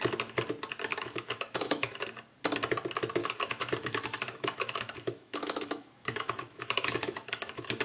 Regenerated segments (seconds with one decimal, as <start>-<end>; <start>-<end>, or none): 0.9-2.0; 3.2-7.8